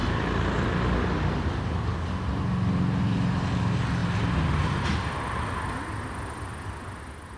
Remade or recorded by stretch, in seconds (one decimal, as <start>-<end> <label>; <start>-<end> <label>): 0.0-7.4 recorded

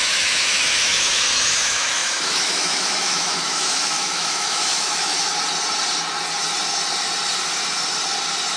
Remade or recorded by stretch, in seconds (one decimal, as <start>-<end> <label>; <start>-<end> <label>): 0.0-5.3 remade; 5.3-8.6 recorded

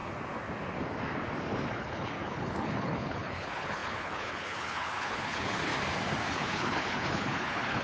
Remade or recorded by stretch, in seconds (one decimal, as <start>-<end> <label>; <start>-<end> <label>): 0.0-1.7 recorded; 1.7-5.7 remade; 5.7-6.3 recorded; 6.3-7.8 remade

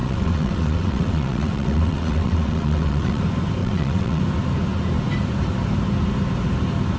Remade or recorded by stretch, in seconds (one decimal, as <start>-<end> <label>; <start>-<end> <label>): 0.0-3.2 remade; 3.2-3.6 recorded; 3.6-4.2 remade; 4.2-7.0 recorded

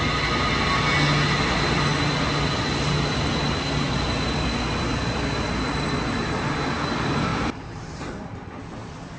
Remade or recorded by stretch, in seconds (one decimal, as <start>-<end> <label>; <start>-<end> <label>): 0.0-7.3 recorded; 7.3-8.5 remade; 8.5-9.2 recorded

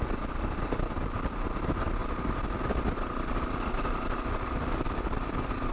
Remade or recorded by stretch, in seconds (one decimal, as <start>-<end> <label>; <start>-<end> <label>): 0.0-2.0 recorded; 2.0-5.7 remade

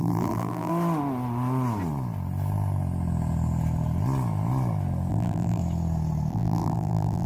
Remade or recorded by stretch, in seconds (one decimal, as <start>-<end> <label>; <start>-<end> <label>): 0.0-0.7 remade; 0.7-5.1 recorded; 5.1-5.6 remade; 5.6-6.3 recorded; 6.3-7.3 remade

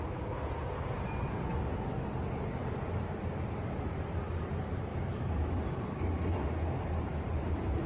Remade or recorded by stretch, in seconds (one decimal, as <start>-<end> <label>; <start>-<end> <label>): 0.0-4.9 recorded; 4.9-5.6 remade; 5.6-7.9 recorded